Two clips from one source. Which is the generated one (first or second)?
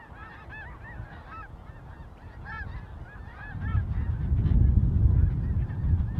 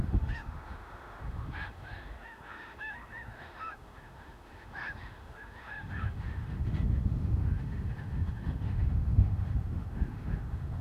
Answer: second